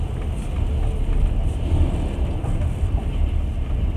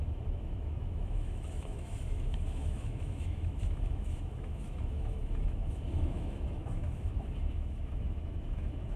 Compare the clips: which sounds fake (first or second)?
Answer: second